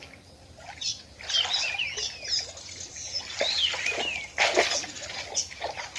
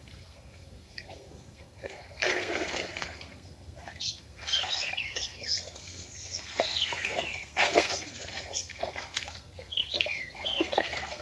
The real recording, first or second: first